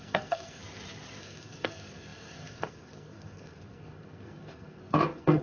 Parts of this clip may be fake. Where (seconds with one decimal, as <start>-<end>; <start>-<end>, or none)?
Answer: 0.0-0.6; 1.2-5.4